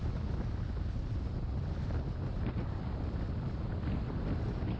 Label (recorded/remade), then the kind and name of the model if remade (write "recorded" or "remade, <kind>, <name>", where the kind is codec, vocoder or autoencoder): recorded